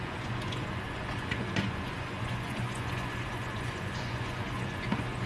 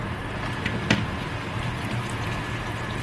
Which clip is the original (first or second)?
second